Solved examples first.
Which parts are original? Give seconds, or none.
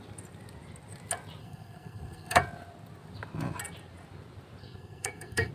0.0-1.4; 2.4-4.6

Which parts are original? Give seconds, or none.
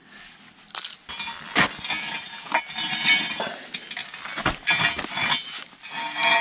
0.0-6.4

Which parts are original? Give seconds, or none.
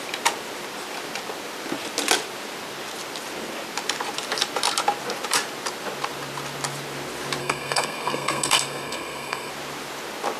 0.0-7.4; 9.5-10.4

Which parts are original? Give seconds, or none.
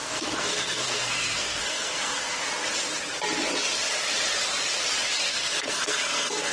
2.4-5.3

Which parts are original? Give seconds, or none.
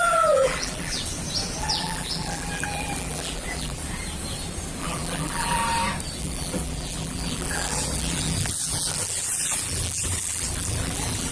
1.0-1.6; 3.8-4.8; 5.6-6.2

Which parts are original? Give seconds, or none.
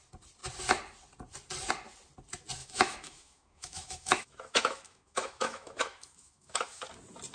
0.0-2.6; 6.8-7.3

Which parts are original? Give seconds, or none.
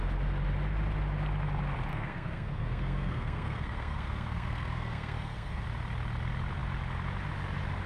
0.0-1.9; 5.6-7.9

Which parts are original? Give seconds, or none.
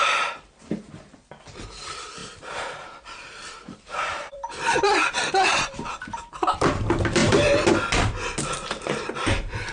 0.0-2.2; 6.3-9.7